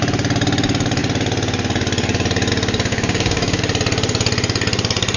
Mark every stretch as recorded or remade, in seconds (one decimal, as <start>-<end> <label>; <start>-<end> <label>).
0.0-2.9 recorded; 2.9-3.6 remade; 3.6-5.2 recorded